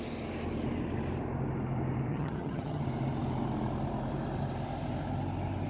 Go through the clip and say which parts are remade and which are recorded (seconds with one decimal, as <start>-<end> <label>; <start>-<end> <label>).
0.0-2.1 recorded; 2.1-2.8 remade; 2.8-5.7 recorded